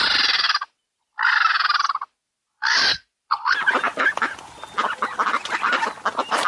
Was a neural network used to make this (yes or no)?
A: no